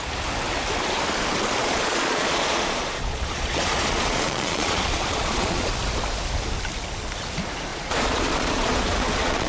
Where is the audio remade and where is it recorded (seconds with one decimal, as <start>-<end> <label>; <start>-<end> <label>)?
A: 0.0-1.6 recorded; 1.6-5.7 remade; 5.7-7.7 recorded; 7.7-9.5 remade